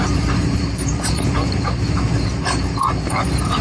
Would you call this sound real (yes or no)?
no